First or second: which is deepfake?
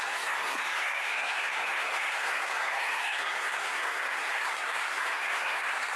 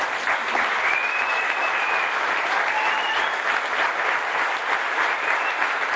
first